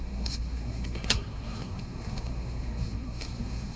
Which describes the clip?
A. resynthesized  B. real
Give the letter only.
A